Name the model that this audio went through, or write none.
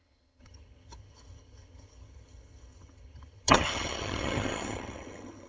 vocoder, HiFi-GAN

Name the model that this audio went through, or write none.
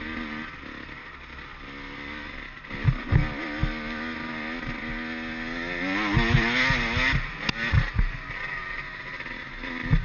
none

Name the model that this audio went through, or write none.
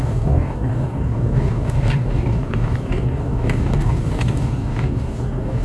codec, DAC